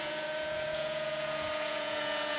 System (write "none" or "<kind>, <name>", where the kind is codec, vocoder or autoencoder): vocoder, Vocos